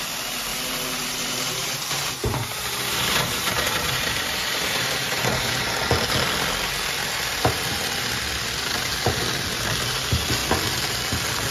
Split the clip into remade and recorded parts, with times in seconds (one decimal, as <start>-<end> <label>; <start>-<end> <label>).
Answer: 0.0-0.5 recorded; 0.5-5.6 remade; 5.6-11.5 recorded